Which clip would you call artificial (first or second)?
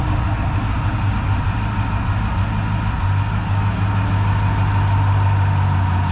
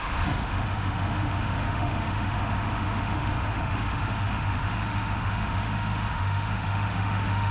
second